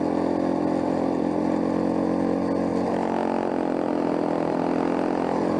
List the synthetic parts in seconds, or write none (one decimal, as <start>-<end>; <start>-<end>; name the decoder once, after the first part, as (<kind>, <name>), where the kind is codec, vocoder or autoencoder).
none